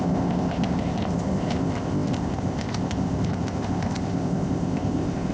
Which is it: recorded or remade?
remade